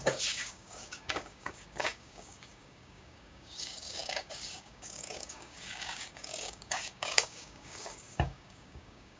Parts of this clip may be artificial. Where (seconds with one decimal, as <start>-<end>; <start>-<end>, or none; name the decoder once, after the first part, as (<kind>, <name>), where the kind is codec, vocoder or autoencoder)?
0.0-9.2 (codec, DAC)